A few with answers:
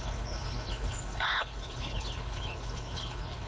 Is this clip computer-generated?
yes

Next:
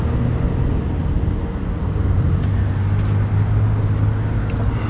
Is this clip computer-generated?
no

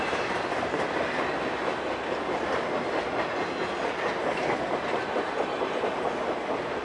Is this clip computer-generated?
no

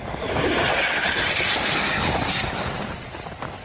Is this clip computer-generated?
no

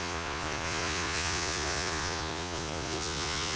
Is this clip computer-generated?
yes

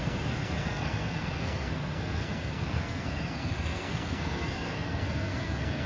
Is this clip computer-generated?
yes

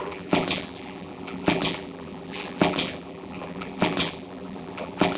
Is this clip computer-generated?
yes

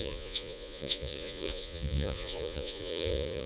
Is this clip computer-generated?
yes